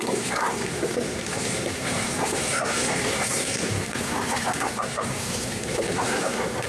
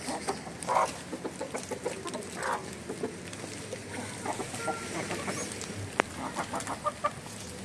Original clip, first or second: second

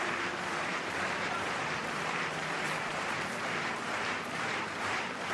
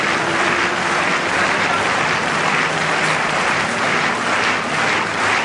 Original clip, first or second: second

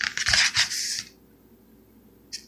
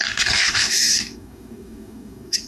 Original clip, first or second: first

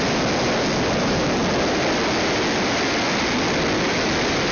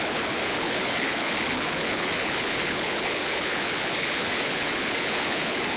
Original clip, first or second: first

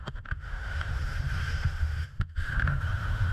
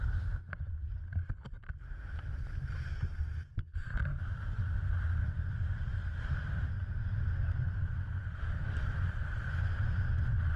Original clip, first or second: second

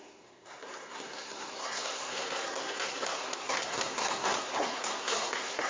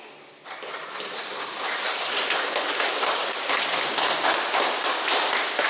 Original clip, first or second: second